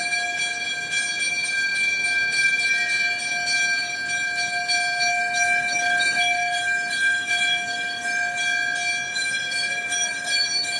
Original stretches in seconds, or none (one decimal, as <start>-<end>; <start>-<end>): 0.0-5.1; 8.4-9.1